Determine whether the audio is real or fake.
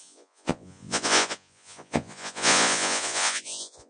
fake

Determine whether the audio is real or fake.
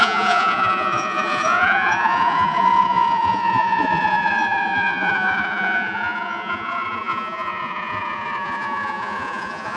fake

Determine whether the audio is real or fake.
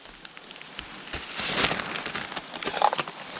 real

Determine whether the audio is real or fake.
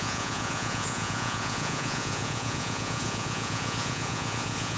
fake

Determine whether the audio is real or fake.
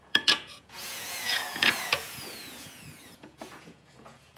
fake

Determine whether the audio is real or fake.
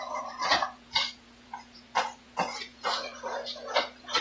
fake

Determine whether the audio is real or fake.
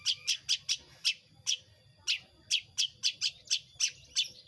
real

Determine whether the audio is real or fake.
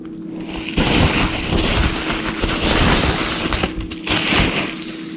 real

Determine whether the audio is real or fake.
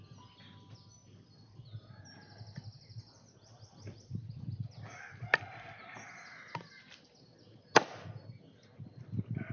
real